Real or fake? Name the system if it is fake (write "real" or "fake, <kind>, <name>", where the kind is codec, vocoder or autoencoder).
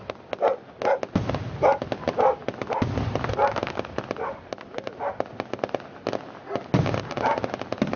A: real